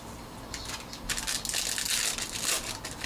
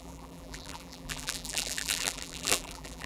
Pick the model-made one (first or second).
second